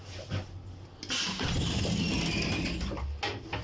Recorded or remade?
recorded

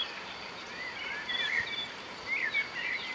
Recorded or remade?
remade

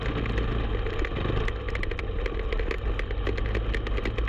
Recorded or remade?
recorded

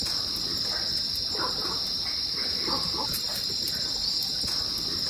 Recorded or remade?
remade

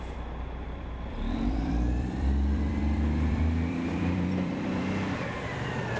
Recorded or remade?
remade